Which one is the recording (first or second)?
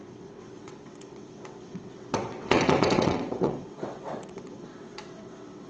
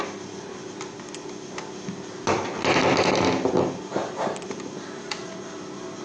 second